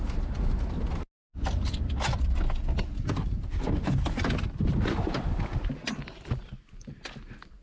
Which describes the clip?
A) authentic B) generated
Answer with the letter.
A